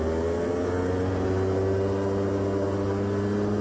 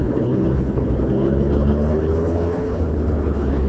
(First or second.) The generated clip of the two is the second